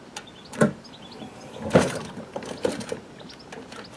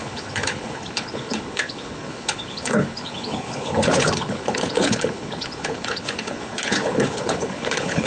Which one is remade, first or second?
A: second